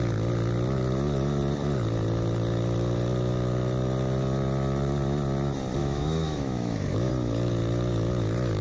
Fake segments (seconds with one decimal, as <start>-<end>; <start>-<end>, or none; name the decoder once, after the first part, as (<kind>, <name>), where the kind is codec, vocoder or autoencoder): 5.8-7.1 (autoencoder, DAC-VAE)